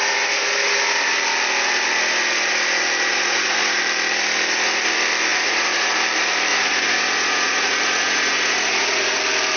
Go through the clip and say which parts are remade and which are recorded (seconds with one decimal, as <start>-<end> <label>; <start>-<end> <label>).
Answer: 0.0-3.1 recorded; 3.1-3.8 remade; 3.8-5.3 recorded; 5.3-5.9 remade; 5.9-6.5 recorded; 6.5-9.2 remade; 9.2-9.6 recorded